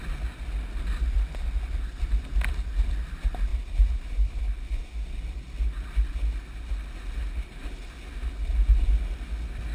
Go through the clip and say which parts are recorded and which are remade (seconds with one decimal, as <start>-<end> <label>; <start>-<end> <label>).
0.0-3.5 recorded; 3.5-4.4 remade; 4.4-9.7 recorded